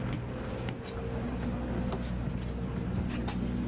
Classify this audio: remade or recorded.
recorded